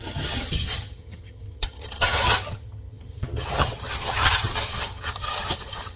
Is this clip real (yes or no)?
no